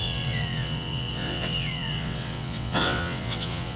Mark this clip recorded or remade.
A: remade